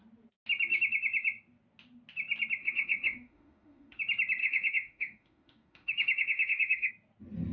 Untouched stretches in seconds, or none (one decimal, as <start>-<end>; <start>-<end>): 0.0-2.6; 4.0-4.4; 6.9-7.5